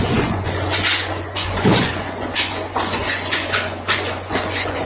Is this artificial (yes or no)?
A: yes